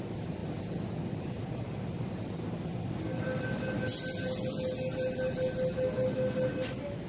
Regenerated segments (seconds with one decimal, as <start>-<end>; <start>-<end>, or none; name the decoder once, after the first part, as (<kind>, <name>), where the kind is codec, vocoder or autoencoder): none